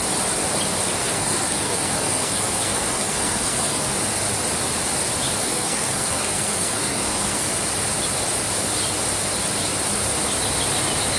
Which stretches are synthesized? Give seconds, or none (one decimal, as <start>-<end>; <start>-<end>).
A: 1.0-3.9; 5.4-7.5